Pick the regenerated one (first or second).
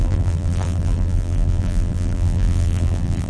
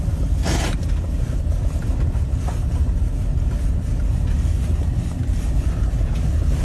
first